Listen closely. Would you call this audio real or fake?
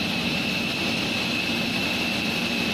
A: real